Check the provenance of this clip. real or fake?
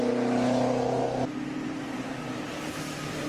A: real